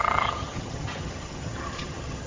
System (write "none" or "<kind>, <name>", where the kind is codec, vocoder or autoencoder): vocoder, HiFi-GAN